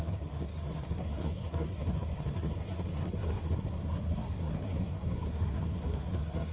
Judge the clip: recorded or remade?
remade